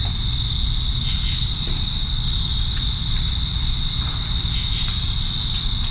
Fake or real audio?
real